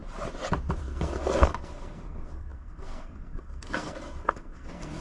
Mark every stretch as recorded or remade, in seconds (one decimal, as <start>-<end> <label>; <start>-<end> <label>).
0.0-0.8 recorded; 0.8-5.0 remade